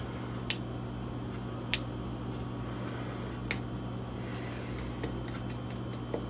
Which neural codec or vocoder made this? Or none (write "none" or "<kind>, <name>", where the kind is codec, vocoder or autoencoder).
none